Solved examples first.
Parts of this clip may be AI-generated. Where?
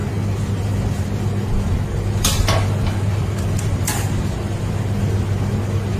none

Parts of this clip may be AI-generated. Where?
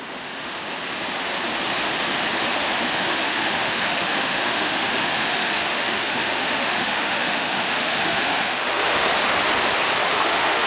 0.0-0.6; 2.3-9.1; 10.0-10.7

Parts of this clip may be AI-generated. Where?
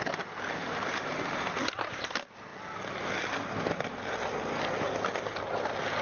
none